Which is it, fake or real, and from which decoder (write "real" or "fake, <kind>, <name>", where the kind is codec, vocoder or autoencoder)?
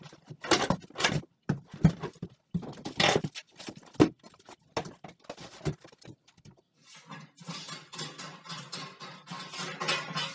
real